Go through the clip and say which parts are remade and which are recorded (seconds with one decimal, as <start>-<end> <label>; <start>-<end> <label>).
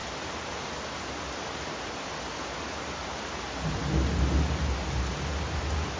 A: 0.0-6.0 recorded